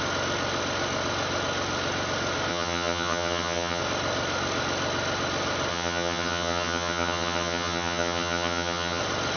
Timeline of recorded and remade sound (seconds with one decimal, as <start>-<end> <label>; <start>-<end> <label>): 0.0-2.5 recorded; 2.5-3.8 remade; 3.8-5.7 recorded; 5.7-9.0 remade; 9.0-9.4 recorded